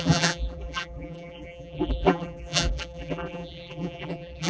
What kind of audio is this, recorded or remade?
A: remade